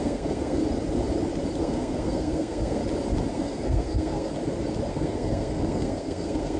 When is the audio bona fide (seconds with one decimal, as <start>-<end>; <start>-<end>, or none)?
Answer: 0.6-1.6; 2.8-3.3; 4.3-4.9